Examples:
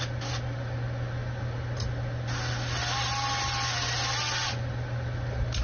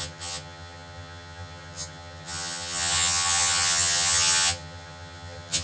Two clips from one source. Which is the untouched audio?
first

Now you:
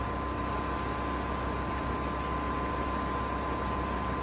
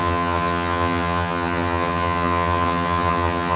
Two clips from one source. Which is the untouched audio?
first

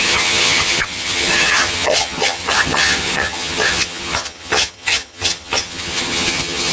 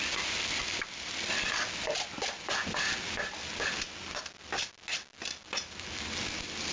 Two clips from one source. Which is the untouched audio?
second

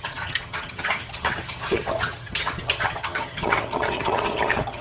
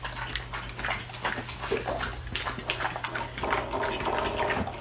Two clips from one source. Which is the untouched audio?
second